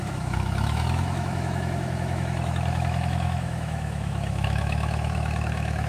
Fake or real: fake